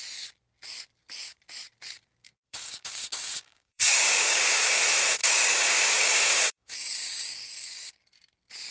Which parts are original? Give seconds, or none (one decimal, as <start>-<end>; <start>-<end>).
0.0-2.2; 4.8-5.2; 7.9-8.7